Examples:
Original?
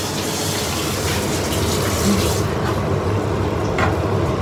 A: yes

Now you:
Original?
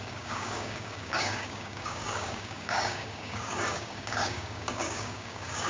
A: no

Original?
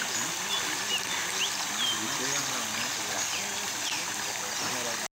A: yes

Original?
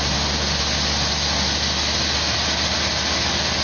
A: yes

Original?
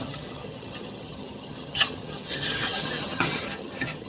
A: no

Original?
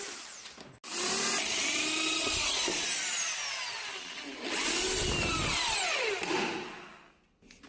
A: yes